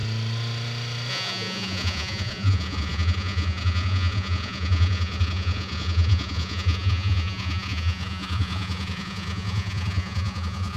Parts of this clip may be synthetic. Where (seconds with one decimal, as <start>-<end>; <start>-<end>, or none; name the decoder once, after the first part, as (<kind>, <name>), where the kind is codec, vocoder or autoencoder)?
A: 1.1-10.8 (vocoder, Vocos)